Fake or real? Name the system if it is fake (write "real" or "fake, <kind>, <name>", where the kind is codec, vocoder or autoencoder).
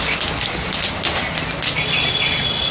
real